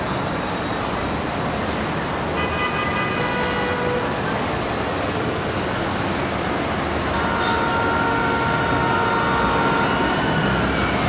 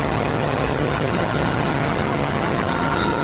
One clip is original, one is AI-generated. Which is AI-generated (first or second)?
second